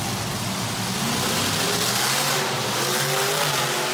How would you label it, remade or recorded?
recorded